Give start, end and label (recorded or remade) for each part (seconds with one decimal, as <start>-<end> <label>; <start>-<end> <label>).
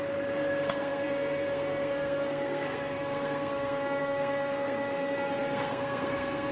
0.0-6.5 remade